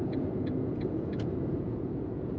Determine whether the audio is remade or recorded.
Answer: remade